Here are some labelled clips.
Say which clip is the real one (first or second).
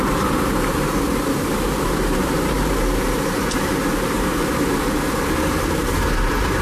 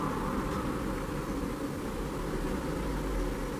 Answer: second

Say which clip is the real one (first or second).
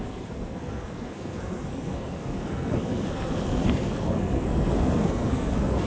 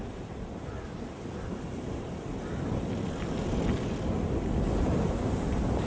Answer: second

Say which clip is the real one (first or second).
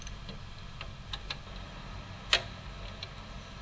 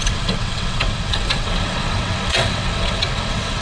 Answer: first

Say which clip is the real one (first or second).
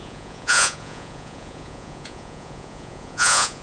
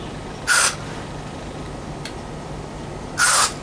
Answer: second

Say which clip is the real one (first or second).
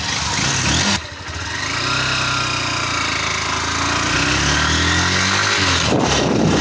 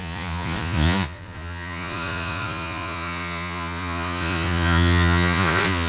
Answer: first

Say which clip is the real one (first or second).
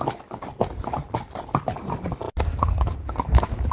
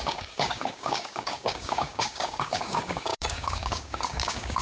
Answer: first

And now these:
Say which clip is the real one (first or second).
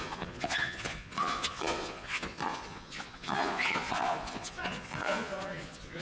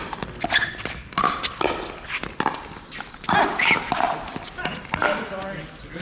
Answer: second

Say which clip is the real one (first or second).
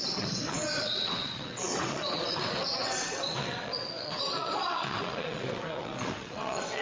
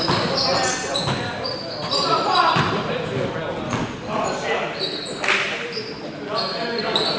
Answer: second